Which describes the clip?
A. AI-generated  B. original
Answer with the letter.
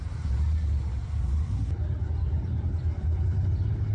B